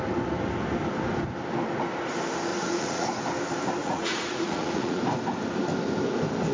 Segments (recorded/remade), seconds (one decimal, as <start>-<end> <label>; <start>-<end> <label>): 0.0-2.5 recorded; 2.5-3.2 remade; 3.2-3.8 recorded; 3.8-5.0 remade; 5.0-6.5 recorded